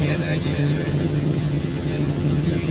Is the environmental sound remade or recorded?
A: remade